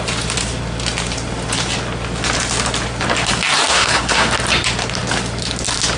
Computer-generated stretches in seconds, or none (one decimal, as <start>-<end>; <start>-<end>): 3.7-4.3

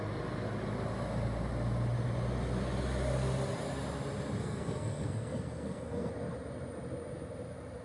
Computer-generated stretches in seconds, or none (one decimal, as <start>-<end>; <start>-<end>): 4.4-6.1